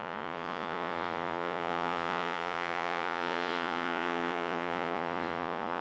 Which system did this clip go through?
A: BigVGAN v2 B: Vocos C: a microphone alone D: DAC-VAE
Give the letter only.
B